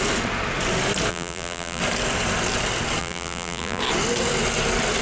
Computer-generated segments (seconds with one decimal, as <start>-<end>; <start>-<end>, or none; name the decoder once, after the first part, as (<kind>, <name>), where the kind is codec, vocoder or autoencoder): 1.1-1.8 (vocoder, BigVGAN v2); 3.0-3.8